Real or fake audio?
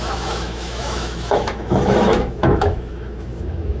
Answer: fake